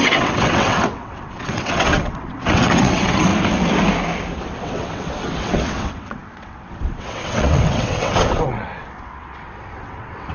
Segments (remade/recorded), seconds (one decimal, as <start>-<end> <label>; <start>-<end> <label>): 0.0-3.3 remade; 3.3-4.4 recorded; 4.4-10.3 remade